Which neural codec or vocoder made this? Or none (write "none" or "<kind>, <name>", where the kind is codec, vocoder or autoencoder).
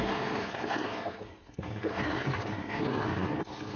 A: codec, SNAC